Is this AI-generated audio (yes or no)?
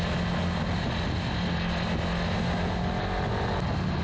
no